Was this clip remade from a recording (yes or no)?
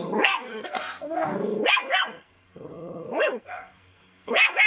yes